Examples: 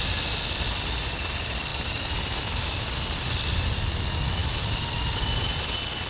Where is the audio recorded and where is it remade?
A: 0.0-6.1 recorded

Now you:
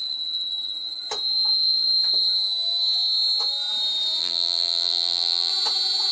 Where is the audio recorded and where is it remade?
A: 0.0-4.2 recorded; 4.2-5.5 remade; 5.5-6.1 recorded

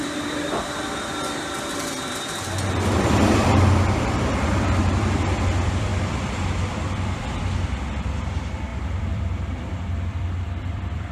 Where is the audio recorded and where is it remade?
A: 0.0-11.1 remade